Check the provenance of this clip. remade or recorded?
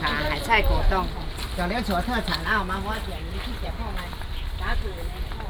recorded